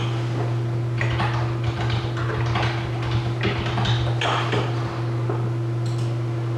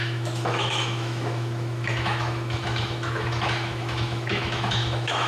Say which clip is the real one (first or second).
first